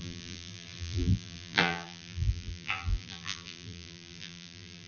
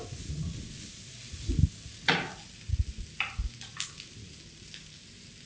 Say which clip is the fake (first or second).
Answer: first